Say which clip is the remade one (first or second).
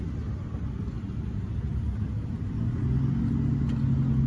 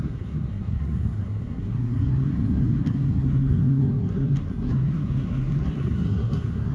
second